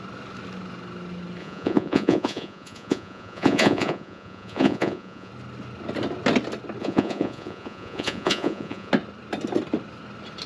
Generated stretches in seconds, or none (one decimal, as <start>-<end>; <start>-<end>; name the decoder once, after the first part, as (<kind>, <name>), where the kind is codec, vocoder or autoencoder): 1.4-5.3 (vocoder, Vocos); 6.8-8.9